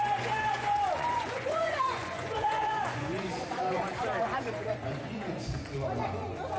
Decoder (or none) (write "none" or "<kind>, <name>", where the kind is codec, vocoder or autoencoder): vocoder, Vocos